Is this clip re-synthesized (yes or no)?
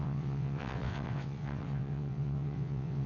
yes